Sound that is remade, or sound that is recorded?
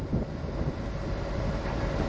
recorded